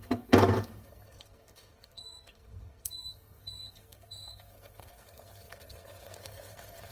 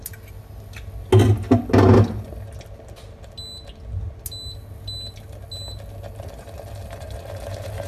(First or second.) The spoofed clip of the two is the first